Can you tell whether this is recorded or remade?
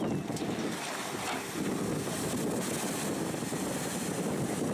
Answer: recorded